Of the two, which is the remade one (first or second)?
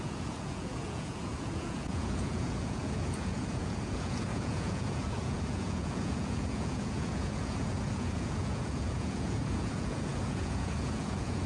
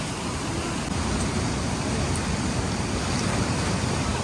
first